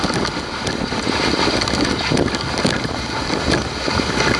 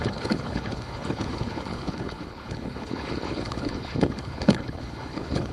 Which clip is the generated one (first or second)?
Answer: second